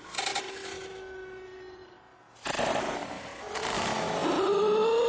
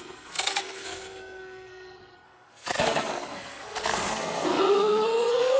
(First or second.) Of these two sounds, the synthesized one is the second